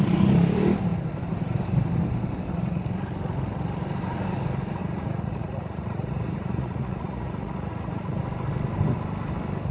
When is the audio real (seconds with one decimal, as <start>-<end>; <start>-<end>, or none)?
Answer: 0.0-4.8; 8.2-9.7